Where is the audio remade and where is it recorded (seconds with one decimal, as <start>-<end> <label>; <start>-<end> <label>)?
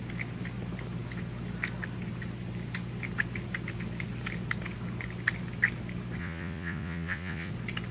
0.0-6.2 recorded; 6.2-7.5 remade; 7.5-7.9 recorded